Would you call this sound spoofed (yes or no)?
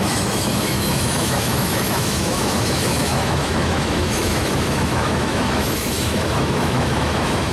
yes